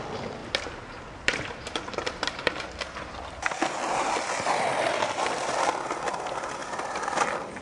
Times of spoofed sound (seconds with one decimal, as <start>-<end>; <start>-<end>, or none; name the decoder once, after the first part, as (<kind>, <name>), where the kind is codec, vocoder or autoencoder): 0.4-5.0 (vocoder, BigVGAN v2)